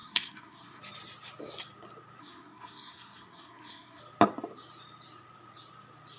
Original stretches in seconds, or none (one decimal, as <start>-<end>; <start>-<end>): 0.8-2.2; 4.0-6.2